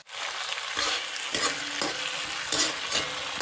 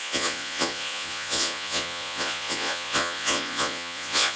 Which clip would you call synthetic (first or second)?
second